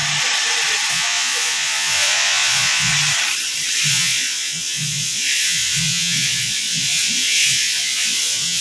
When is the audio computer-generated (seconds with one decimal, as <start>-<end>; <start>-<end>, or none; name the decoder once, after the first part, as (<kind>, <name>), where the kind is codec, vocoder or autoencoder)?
0.9-2.9 (vocoder, Vocos); 3.9-8.6